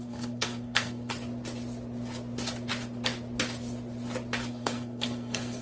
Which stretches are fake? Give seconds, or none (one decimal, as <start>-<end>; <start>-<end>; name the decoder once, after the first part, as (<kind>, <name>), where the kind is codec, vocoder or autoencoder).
0.0-1.1 (codec, SNAC); 4.5-5.6